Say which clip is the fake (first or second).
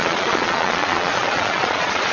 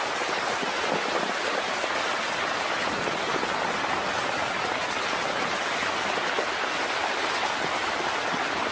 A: first